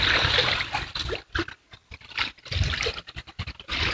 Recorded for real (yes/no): yes